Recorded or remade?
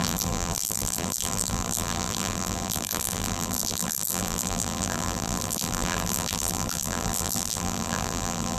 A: remade